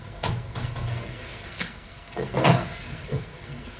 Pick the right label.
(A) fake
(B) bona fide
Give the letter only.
A